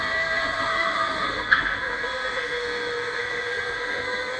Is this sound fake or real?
fake